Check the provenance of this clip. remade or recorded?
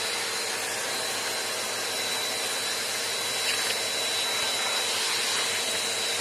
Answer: recorded